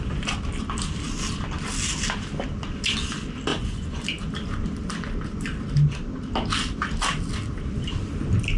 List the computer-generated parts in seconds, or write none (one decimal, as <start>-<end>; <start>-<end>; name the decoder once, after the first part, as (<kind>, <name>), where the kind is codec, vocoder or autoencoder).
3.5-4.0 (vocoder, Vocos)